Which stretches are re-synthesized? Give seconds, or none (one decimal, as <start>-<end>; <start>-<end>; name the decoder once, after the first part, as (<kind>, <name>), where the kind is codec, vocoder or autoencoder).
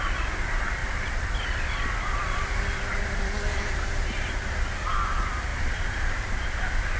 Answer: 5.5-6.3 (vocoder, BigVGAN v2)